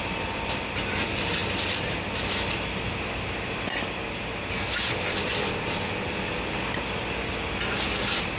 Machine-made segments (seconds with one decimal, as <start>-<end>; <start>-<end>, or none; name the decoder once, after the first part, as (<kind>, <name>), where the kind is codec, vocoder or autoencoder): none